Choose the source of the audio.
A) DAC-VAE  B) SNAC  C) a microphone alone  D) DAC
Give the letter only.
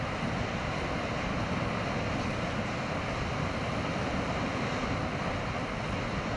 C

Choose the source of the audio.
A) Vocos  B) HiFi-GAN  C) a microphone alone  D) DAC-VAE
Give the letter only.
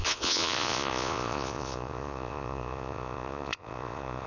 A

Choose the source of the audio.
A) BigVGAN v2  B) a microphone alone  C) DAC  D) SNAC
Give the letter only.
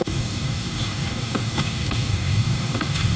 C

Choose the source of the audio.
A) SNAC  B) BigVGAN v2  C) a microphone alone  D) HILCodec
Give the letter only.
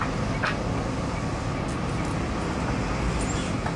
C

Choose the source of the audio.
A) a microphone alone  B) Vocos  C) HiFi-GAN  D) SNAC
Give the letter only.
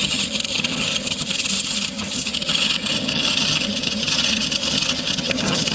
C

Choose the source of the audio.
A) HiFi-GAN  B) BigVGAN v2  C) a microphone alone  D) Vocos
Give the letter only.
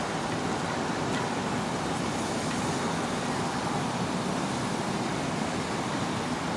C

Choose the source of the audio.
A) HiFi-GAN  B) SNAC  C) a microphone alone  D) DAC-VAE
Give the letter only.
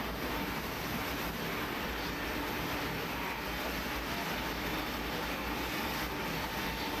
C